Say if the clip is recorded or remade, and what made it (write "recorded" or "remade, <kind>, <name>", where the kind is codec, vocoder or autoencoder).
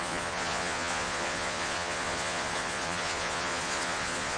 remade, vocoder, Vocos